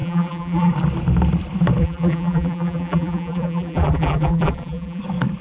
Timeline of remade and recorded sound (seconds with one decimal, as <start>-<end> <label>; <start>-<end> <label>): 0.0-0.7 remade; 0.7-1.8 recorded; 1.8-5.0 remade; 5.0-5.4 recorded